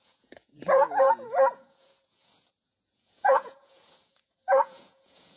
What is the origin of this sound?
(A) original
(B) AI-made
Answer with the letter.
B